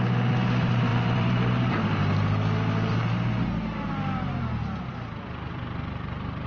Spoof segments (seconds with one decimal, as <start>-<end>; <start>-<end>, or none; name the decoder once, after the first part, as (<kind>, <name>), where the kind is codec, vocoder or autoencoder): 0.9-1.7 (vocoder, BigVGAN v2)